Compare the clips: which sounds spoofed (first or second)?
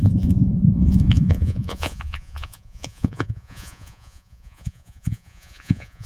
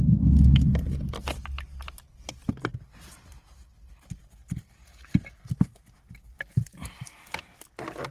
first